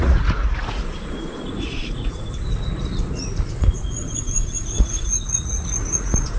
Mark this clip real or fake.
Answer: fake